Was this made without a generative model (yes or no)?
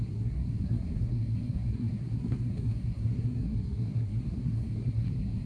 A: no